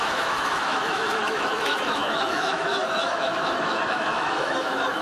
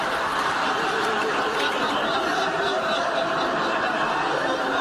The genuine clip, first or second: second